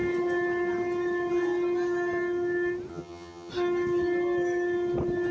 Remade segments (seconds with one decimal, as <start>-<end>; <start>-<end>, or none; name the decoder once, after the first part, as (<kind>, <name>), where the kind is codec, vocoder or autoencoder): 2.9-3.5 (vocoder, HiFi-GAN)